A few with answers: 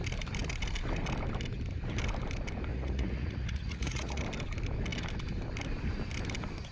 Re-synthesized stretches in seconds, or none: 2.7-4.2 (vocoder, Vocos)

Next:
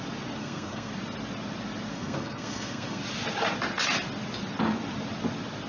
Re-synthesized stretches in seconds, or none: 0.4-0.9 (codec, SNAC); 1.9-3.0

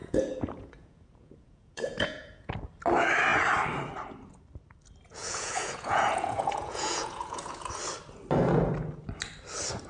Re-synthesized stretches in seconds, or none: 0.0-2.5 (vocoder, Vocos); 5.1-7.7

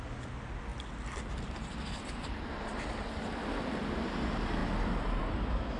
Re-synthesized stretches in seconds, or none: 4.6-5.2 (vocoder, BigVGAN v2)